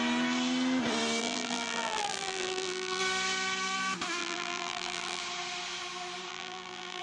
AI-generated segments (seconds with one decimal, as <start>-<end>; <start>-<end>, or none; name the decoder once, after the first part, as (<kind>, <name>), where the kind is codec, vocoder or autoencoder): 1.2-3.0 (vocoder, BigVGAN v2); 4.2-5.2; 6.3-7.0